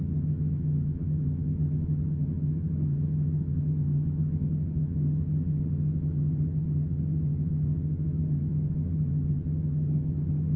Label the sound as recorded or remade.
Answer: remade